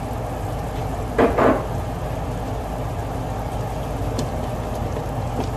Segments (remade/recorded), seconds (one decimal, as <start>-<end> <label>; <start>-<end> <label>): 0.0-5.6 recorded